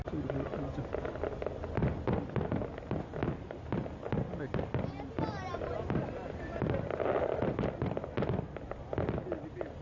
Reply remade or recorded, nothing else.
recorded